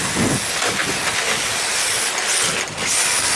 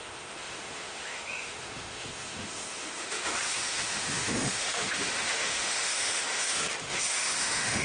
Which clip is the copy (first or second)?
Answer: second